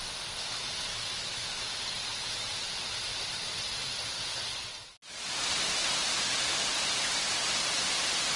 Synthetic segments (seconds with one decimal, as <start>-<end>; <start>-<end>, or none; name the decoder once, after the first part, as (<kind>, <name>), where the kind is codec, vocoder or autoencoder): 0.9-1.5 (autoencoder, DAC-VAE); 2.1-2.6